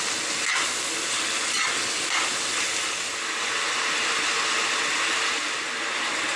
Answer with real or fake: real